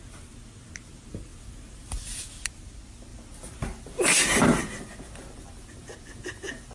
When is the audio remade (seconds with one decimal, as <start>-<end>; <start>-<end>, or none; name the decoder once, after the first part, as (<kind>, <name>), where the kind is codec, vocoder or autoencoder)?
none